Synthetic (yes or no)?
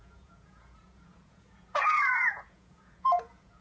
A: yes